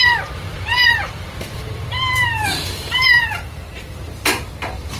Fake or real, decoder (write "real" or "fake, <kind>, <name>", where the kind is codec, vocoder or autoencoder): fake, vocoder, BigVGAN v2